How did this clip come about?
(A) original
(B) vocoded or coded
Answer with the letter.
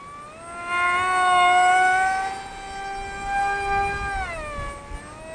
A